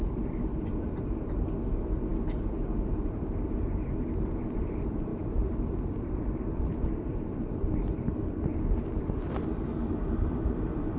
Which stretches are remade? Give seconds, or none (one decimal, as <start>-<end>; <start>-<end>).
0.0-2.1; 3.0-11.0